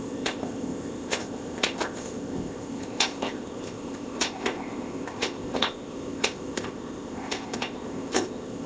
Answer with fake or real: fake